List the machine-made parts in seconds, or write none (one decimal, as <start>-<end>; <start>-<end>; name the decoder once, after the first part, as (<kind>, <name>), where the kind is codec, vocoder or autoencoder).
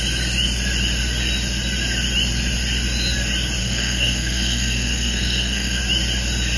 3.6-5.8 (codec, SNAC)